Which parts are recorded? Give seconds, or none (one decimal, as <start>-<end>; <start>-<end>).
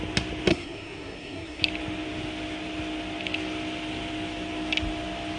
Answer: 0.0-0.5; 1.6-5.4